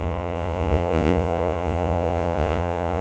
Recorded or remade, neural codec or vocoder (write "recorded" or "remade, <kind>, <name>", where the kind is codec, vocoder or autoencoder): remade, vocoder, Vocos